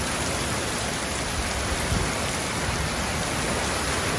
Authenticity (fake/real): real